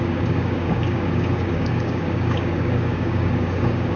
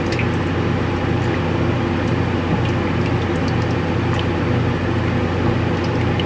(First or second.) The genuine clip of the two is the second